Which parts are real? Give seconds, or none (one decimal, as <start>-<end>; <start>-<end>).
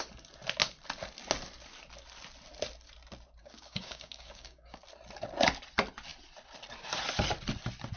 0.0-3.4; 4.8-8.0